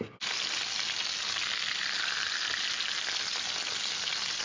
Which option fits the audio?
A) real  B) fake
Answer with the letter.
A